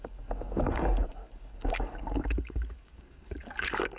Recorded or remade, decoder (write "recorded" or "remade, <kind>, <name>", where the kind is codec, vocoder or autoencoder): remade, codec, DAC